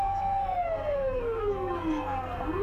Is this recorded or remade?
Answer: remade